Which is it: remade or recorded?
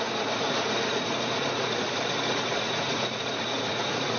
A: remade